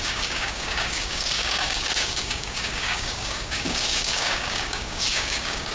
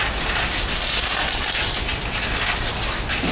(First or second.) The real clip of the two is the second